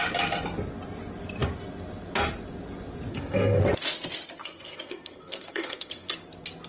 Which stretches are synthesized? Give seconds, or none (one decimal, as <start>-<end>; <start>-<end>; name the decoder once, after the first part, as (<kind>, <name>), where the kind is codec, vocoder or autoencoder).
3.1-3.6 (codec, SNAC); 4.4-6.1